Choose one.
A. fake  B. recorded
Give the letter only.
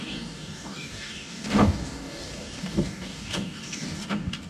A